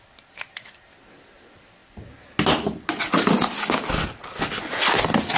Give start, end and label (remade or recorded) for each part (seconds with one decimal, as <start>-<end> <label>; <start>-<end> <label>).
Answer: 0.0-5.4 recorded